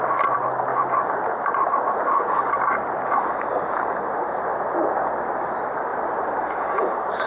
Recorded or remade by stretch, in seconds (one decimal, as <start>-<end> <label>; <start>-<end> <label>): 0.0-5.9 recorded; 5.9-6.7 remade; 6.7-7.3 recorded